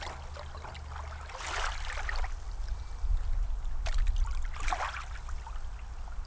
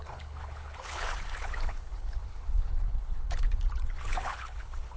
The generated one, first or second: second